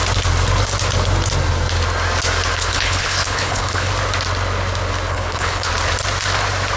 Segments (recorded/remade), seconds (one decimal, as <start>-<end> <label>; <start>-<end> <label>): 0.0-2.6 recorded; 2.6-3.9 remade; 3.9-5.1 recorded; 5.1-5.7 remade; 5.7-6.8 recorded